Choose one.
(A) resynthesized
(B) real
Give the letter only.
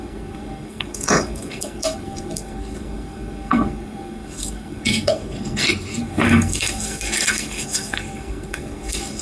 A